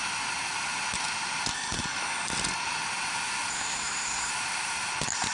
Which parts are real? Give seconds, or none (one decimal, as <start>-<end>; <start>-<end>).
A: 0.0-3.5; 4.3-5.3